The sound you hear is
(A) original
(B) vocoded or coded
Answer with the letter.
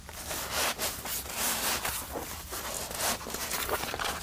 A